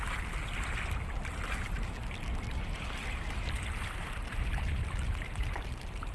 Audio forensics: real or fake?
real